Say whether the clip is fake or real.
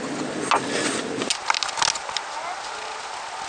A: real